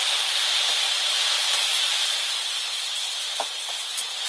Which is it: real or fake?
real